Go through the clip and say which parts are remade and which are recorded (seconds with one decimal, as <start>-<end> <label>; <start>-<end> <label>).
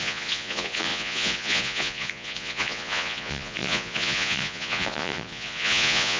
0.0-6.2 remade